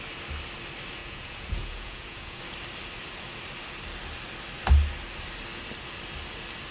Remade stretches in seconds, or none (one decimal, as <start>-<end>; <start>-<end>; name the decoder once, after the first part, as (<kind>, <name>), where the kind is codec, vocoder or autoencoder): 1.0-2.4 (vocoder, Vocos)